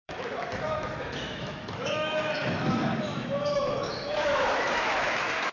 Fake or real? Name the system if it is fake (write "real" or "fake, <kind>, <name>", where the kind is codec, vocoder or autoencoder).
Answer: fake, autoencoder, DAC-VAE